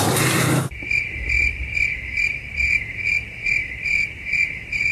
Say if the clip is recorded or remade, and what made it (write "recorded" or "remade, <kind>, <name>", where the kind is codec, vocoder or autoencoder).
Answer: recorded